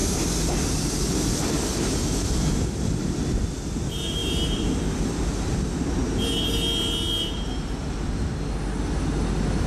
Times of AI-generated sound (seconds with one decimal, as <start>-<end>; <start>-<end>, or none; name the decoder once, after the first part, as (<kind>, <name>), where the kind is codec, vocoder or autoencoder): 4.2-4.8 (vocoder, BigVGAN v2)